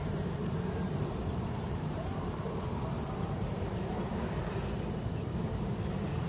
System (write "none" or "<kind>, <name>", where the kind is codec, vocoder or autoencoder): vocoder, BigVGAN v2